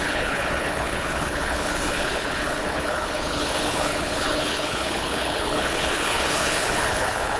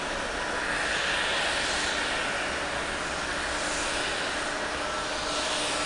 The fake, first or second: first